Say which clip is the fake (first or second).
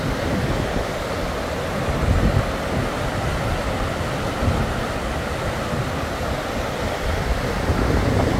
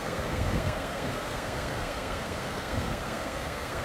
second